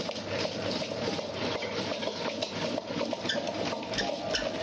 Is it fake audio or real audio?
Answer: fake